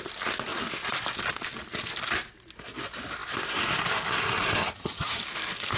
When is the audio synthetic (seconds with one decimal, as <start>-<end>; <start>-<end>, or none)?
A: 4.6-5.2